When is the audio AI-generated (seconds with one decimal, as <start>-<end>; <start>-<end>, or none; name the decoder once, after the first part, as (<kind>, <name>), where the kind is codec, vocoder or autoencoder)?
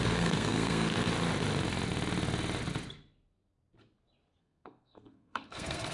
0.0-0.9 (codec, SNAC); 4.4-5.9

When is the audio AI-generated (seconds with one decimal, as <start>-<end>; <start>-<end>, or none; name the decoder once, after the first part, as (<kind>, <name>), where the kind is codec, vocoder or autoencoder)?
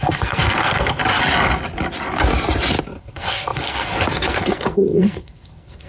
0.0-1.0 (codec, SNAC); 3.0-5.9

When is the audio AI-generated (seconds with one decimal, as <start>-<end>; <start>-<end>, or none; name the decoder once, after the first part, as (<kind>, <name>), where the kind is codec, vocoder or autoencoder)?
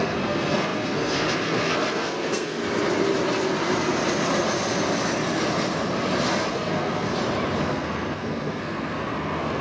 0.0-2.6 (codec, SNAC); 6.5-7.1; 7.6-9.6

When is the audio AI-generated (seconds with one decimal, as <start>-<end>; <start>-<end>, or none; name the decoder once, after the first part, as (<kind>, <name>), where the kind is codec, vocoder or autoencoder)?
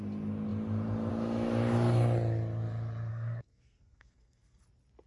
3.1-4.6 (codec, SNAC)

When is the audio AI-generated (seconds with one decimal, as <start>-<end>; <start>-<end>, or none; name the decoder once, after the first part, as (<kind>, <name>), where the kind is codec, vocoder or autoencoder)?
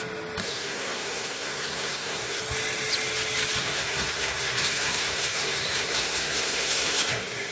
0.4-2.4 (codec, SNAC); 3.6-7.5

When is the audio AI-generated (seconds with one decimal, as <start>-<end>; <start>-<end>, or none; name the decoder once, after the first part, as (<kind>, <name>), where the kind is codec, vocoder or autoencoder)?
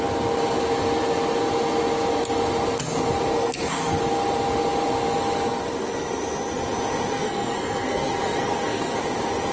3.3-4.0 (codec, SNAC); 7.1-9.0